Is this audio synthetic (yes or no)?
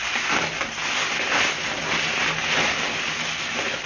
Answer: no